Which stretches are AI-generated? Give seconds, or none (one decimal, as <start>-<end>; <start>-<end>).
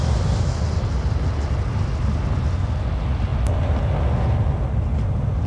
none